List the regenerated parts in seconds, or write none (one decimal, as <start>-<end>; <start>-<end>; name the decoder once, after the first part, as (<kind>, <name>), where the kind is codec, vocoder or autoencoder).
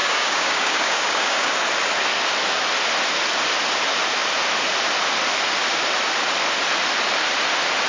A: 0.0-1.5 (codec, DAC)